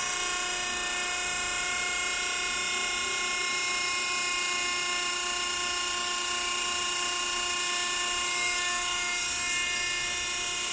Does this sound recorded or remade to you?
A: recorded